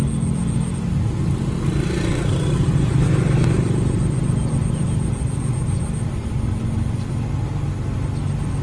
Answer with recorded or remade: recorded